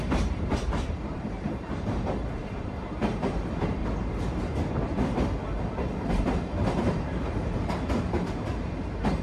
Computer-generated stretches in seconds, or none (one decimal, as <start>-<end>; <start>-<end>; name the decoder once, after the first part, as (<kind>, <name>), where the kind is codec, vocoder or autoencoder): 0.0-3.8 (vocoder, BigVGAN v2); 6.1-9.2